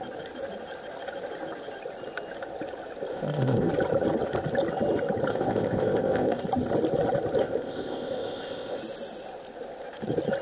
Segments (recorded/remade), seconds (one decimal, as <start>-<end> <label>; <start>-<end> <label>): 0.0-3.1 recorded; 3.1-3.7 remade; 3.7-5.3 recorded; 5.3-6.4 remade; 6.4-7.4 recorded; 7.4-8.8 remade; 8.8-10.4 recorded